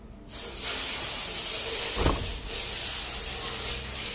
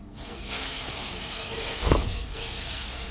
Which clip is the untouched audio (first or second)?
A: first